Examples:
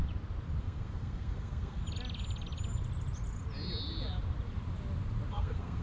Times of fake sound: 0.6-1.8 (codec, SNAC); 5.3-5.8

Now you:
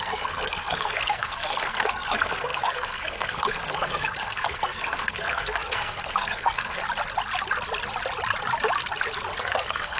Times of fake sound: 0.0-6.8 (codec, SNAC); 9.4-10.0

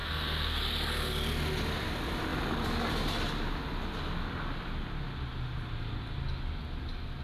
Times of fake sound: 0.0-0.6 (codec, SNAC)

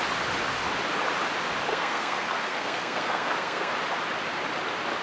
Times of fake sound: 1.7-3.7 (codec, SNAC)

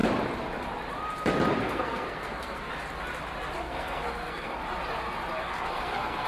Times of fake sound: 1.6-2.7 (codec, SNAC); 3.6-4.6; 5.4-6.3

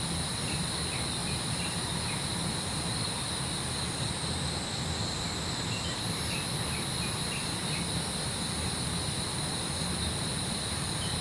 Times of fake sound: none

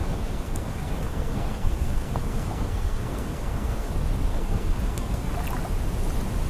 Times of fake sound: 0.0-3.9 (codec, SNAC); 4.3-5.3